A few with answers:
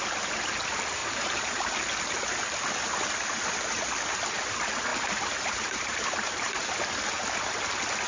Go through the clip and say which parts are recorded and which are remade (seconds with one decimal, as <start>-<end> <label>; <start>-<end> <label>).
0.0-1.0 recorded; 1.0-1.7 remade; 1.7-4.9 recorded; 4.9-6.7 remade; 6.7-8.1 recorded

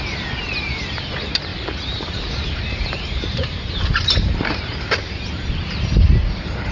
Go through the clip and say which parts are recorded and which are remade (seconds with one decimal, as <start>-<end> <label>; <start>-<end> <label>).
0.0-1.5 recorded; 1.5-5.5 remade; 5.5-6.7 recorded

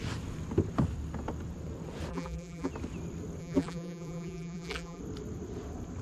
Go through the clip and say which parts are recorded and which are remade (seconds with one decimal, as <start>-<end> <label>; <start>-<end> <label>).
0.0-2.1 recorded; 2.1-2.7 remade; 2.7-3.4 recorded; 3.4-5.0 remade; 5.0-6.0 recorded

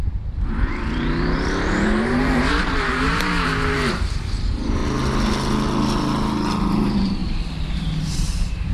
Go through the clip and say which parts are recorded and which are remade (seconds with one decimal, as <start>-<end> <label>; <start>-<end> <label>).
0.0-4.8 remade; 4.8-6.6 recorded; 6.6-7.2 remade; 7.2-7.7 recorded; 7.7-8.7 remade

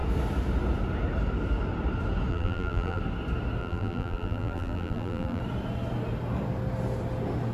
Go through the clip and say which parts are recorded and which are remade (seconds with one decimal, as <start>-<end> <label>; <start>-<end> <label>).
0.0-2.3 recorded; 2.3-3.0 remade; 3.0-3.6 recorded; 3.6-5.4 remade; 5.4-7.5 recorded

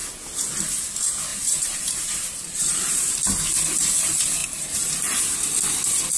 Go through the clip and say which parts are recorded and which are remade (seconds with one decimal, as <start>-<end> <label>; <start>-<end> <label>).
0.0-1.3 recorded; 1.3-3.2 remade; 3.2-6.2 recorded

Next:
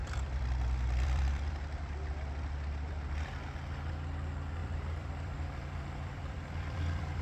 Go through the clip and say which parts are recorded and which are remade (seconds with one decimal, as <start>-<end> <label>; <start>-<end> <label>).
0.0-2.9 remade; 2.9-4.6 recorded; 4.6-7.2 remade

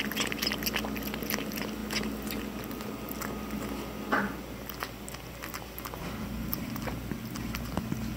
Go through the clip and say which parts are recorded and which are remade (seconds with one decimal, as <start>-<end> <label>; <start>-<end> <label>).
0.0-8.2 recorded